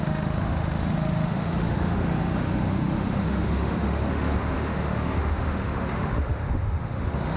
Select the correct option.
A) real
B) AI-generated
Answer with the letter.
B